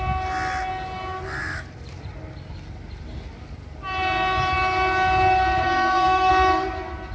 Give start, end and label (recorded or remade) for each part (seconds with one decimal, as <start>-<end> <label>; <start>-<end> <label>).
0.0-5.6 recorded; 5.6-6.3 remade; 6.3-7.1 recorded